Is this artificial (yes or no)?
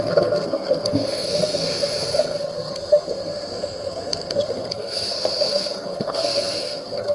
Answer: yes